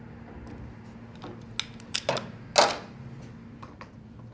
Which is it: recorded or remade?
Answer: recorded